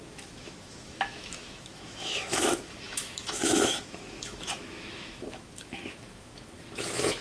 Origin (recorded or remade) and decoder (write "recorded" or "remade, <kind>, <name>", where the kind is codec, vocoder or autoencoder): remade, autoencoder, DAC-VAE